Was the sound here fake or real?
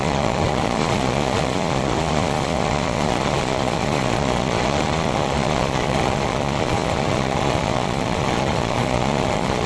fake